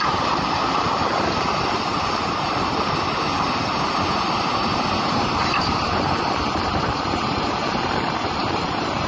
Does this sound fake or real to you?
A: fake